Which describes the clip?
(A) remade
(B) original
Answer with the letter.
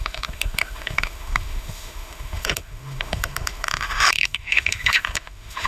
A